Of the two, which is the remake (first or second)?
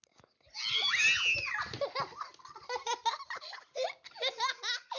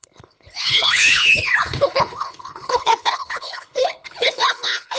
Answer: second